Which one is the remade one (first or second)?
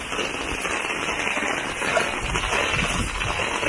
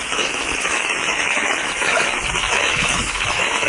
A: second